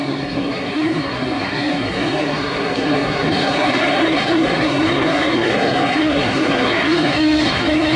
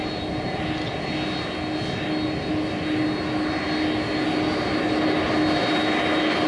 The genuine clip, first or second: second